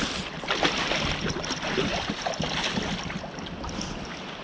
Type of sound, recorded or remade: recorded